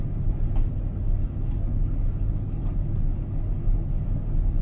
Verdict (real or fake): real